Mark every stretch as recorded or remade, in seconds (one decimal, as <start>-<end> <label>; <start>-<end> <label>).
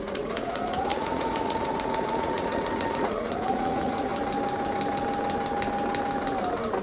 0.0-4.1 remade; 4.1-6.8 recorded